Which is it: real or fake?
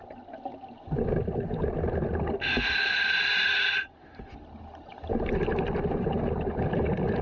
real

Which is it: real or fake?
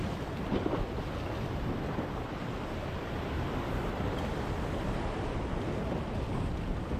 real